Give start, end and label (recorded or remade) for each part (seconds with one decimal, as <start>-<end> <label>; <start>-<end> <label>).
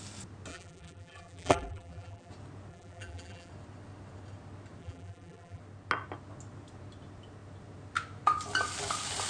0.0-0.5 recorded; 0.5-2.3 remade; 2.3-2.7 recorded; 2.7-3.5 remade; 3.5-4.8 recorded; 4.8-5.6 remade; 5.6-9.3 recorded